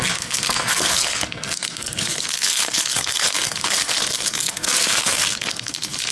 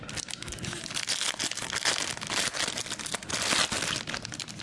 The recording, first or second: second